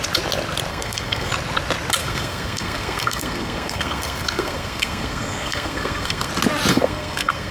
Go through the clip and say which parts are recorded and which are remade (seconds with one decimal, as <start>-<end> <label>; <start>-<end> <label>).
0.0-0.7 recorded; 0.7-1.3 remade; 1.3-2.0 recorded; 2.0-6.3 remade; 6.3-6.7 recorded; 6.7-7.5 remade